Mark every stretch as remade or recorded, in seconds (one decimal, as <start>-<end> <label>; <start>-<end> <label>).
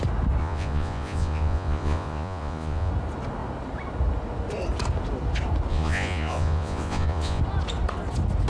0.0-0.4 recorded; 0.4-2.9 remade; 2.9-5.7 recorded; 5.7-7.4 remade; 7.4-8.5 recorded